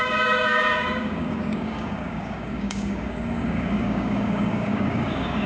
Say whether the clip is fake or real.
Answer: fake